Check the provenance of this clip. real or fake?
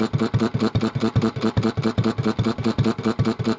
real